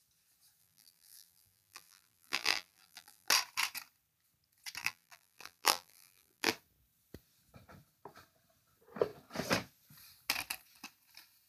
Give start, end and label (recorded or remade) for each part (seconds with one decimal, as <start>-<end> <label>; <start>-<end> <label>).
0.0-0.6 recorded; 0.6-3.3 remade; 3.3-4.8 recorded; 4.8-6.5 remade; 6.5-11.5 recorded